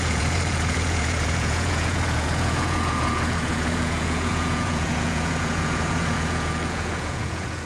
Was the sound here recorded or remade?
remade